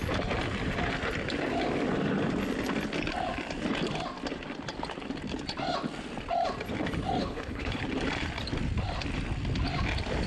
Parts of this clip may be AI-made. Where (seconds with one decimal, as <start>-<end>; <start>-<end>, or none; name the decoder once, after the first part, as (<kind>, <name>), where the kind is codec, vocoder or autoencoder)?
7.2-7.8 (codec, HILCodec)